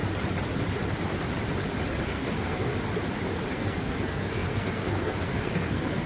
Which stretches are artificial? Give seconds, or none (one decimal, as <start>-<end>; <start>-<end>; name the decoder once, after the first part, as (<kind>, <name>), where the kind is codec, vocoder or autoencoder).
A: 2.0-2.7 (codec, SNAC); 3.5-6.1